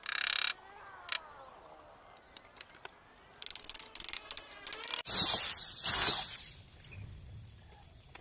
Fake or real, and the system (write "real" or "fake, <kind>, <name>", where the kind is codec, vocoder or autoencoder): real